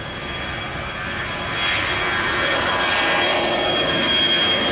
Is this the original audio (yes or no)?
yes